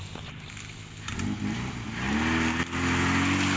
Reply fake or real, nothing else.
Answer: real